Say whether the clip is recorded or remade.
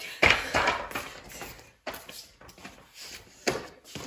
recorded